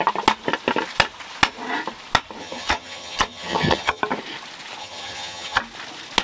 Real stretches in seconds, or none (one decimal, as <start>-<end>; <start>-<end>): 0.0-2.4; 4.0-4.8; 5.6-6.2